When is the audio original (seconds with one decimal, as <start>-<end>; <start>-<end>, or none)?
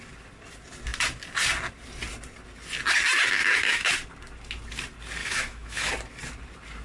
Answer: 0.0-3.4; 3.9-5.2; 5.9-6.8